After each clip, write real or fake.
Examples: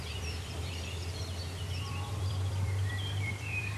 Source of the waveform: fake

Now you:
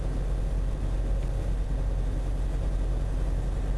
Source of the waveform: real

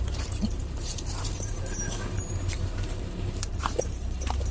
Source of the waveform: fake